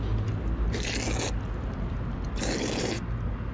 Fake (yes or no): no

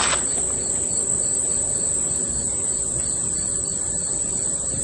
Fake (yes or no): no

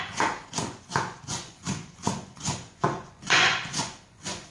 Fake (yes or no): yes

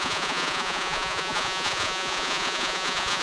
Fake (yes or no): yes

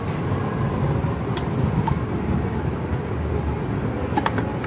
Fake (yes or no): no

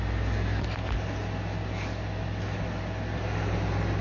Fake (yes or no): no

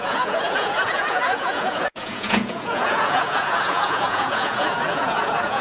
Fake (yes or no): yes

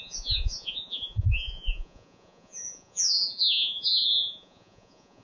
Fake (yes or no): yes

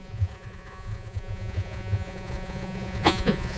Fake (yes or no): yes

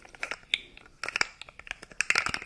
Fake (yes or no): no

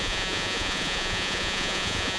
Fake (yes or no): yes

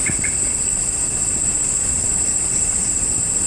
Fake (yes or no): no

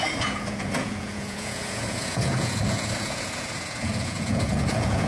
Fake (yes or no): yes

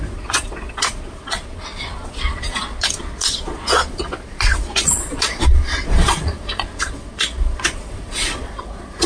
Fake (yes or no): yes